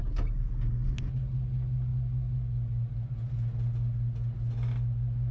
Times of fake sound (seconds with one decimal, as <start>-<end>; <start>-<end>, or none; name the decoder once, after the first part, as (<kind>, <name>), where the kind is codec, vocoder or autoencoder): none